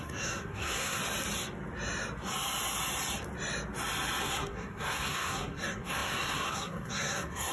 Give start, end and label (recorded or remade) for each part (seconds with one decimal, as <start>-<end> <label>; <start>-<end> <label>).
0.0-1.0 remade; 1.0-4.2 recorded; 4.2-7.5 remade